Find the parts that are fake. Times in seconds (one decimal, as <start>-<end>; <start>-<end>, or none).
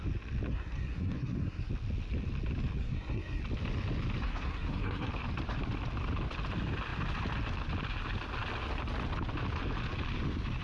0.5-1.7; 2.8-3.4; 4.2-5.1